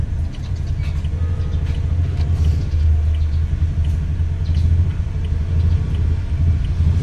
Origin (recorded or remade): recorded